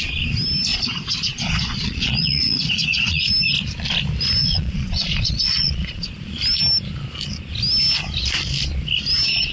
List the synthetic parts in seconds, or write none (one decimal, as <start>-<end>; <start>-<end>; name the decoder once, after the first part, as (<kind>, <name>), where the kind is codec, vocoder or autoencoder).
0.7-3.3 (vocoder, Vocos); 4.4-6.1